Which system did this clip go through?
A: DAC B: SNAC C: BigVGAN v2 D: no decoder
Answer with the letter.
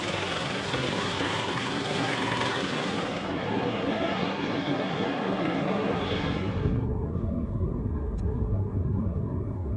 B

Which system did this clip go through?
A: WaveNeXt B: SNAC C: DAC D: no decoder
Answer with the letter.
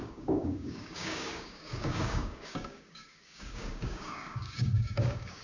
C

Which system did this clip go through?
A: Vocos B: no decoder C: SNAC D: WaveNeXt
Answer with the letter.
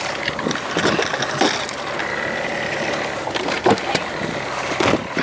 B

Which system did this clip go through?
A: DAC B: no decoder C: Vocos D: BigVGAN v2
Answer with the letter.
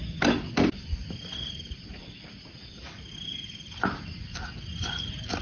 B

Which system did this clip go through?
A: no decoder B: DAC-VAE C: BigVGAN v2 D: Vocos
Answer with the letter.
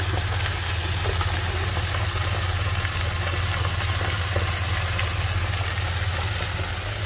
A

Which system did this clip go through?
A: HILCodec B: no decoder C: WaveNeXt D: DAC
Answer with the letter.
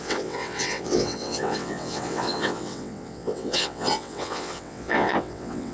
C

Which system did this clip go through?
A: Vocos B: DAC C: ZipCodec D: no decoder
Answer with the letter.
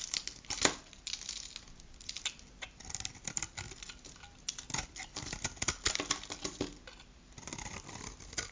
D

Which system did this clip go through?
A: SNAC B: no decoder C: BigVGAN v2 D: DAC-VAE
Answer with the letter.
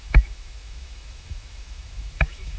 D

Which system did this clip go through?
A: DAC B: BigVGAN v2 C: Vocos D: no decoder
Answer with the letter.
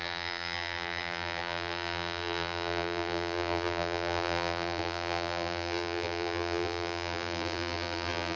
B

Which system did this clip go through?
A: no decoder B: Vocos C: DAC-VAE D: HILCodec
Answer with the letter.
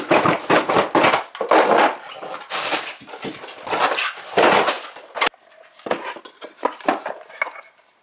A